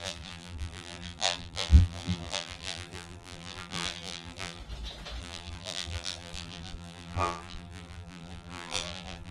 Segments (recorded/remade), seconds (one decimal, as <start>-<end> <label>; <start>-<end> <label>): 0.0-4.6 remade; 4.6-5.2 recorded; 5.2-9.3 remade